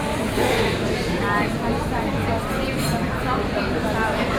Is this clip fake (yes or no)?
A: no